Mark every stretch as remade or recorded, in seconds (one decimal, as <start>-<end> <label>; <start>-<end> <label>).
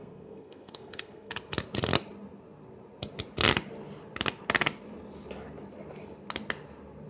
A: 0.0-1.3 remade; 1.3-7.1 recorded